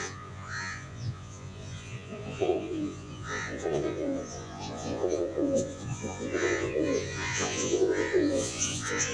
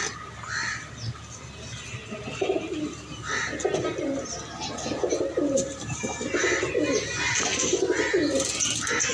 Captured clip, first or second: second